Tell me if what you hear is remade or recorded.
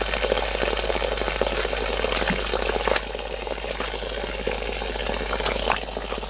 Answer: recorded